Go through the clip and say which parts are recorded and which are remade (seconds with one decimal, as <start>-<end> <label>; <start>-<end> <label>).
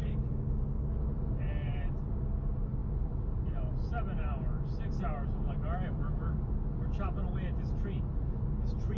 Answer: 0.0-0.5 remade; 0.5-9.0 recorded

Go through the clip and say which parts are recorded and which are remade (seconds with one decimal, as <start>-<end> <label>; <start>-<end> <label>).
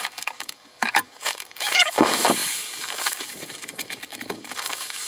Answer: 0.0-5.1 remade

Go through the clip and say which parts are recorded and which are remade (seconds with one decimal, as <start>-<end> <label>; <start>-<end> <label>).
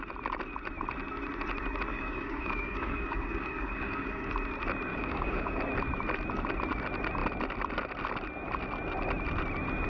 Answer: 0.0-1.9 recorded; 1.9-4.3 remade; 4.3-4.9 recorded; 4.9-5.6 remade; 5.6-9.9 recorded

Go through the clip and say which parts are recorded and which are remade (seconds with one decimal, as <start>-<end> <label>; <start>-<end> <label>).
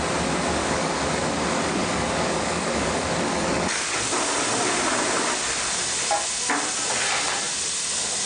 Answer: 0.0-0.6 recorded; 0.6-4.1 remade; 4.1-8.3 recorded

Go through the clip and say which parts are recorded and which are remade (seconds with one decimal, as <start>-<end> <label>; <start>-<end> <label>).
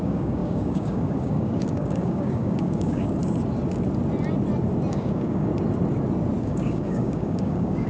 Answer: 0.0-3.2 remade; 3.2-4.9 recorded; 4.9-5.5 remade; 5.5-6.4 recorded; 6.4-7.9 remade